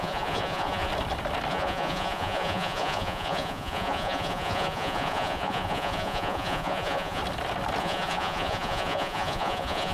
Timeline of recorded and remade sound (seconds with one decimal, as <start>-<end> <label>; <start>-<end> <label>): 0.0-0.9 remade; 0.9-1.5 recorded; 1.5-7.2 remade; 7.2-7.8 recorded; 7.8-9.9 remade